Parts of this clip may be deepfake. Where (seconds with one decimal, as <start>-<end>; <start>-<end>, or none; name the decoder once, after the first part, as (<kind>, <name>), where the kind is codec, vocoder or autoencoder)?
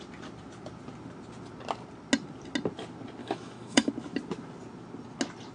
3.2-3.9 (autoencoder, DAC-VAE)